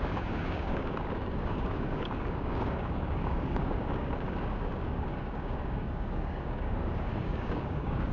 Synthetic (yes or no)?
yes